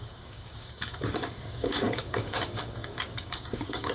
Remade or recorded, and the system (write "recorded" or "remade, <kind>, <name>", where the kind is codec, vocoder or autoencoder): remade, codec, DAC